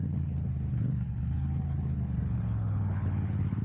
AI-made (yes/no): yes